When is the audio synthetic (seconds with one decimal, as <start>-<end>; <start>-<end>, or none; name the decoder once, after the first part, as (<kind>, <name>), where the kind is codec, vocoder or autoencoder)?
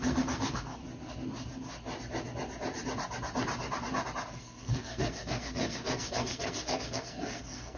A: 0.0-0.8 (codec, SNAC); 4.4-7.8